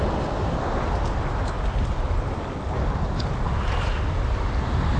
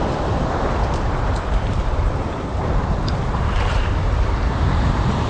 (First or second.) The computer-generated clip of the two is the second